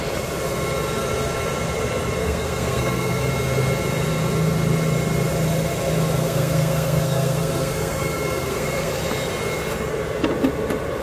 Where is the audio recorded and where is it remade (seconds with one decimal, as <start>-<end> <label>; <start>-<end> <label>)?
0.0-2.2 recorded; 2.2-3.3 remade; 3.3-6.2 recorded; 6.2-8.9 remade; 8.9-11.0 recorded